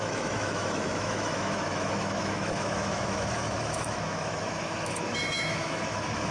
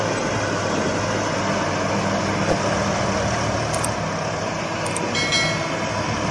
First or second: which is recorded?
second